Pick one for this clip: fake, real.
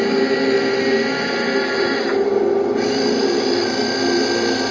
real